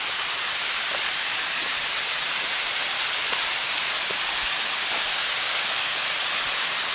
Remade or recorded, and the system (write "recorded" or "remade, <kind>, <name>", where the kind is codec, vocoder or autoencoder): remade, vocoder, BigVGAN v2